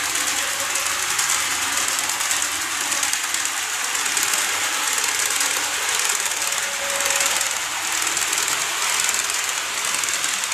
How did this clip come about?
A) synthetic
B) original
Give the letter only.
B